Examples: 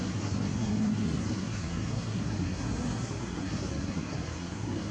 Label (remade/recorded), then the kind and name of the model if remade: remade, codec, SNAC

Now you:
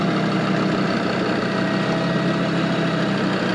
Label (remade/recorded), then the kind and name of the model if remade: recorded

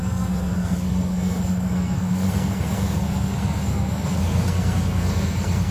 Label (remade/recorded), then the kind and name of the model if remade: remade, codec, SNAC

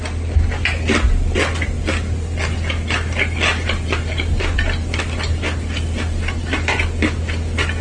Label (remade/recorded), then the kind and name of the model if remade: recorded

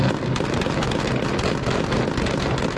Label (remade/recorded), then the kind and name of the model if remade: recorded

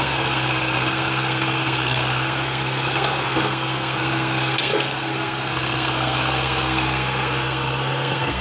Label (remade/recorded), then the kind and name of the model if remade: remade, codec, SNAC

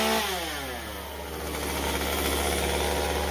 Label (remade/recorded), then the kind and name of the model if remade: recorded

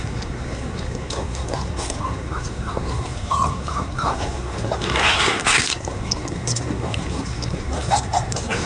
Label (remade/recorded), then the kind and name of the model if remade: remade, codec, SNAC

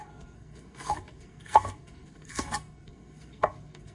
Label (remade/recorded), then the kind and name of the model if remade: remade, codec, SNAC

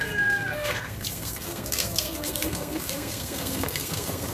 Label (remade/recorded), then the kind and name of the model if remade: remade, codec, SNAC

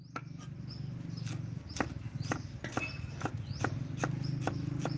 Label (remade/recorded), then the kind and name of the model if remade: recorded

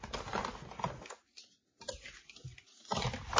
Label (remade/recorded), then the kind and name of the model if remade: recorded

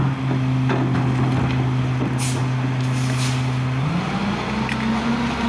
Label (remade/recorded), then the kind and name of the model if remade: recorded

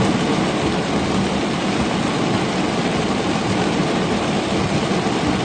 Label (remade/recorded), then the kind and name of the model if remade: recorded